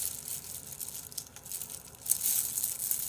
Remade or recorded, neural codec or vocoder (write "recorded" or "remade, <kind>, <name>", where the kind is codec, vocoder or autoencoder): recorded